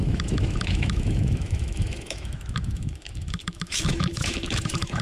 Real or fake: fake